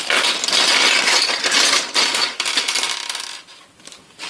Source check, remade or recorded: recorded